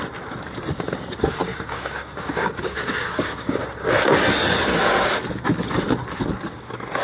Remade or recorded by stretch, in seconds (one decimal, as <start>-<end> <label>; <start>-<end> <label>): 0.0-1.5 recorded; 1.5-3.6 remade; 3.6-7.0 recorded